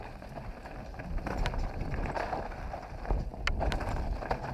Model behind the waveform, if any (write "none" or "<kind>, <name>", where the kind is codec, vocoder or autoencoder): none